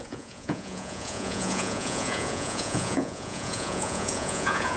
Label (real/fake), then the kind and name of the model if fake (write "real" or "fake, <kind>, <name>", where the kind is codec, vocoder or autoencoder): fake, vocoder, Vocos